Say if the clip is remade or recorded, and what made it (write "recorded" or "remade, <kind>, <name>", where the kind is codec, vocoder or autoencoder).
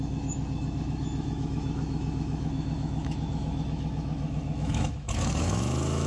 remade, autoencoder, DAC-VAE